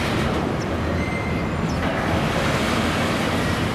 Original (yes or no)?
yes